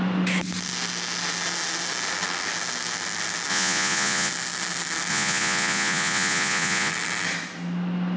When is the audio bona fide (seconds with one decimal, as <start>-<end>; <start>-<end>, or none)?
0.0-3.5; 4.3-5.1; 6.9-8.2